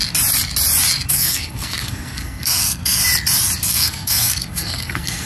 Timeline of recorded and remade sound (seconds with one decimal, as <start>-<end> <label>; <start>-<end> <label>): 0.0-1.1 recorded; 1.1-3.0 remade; 3.0-3.6 recorded; 3.6-5.3 remade